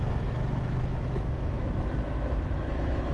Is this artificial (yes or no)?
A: yes